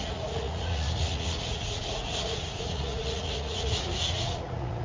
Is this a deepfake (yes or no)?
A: yes